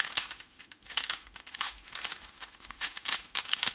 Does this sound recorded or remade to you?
remade